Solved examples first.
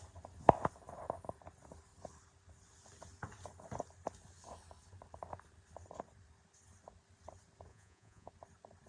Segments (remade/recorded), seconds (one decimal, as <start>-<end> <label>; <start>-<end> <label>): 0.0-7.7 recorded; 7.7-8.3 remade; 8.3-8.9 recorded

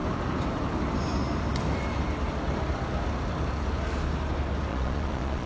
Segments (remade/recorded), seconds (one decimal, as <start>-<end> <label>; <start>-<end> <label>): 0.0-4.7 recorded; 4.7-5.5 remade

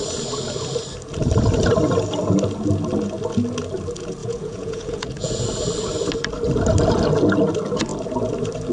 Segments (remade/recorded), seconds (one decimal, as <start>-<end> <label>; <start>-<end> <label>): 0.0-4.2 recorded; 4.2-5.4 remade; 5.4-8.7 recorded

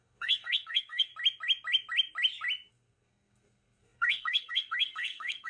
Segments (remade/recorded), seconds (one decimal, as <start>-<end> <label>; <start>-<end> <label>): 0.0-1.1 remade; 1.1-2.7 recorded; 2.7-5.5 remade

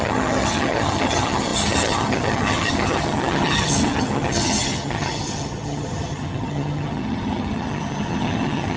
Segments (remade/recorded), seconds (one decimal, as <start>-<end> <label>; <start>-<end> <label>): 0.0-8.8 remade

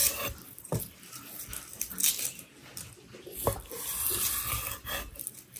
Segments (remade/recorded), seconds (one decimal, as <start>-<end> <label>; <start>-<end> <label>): 0.0-0.8 remade; 0.8-5.6 recorded

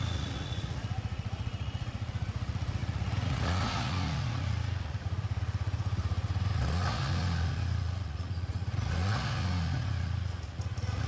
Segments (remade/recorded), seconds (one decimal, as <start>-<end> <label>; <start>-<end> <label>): 0.0-11.1 remade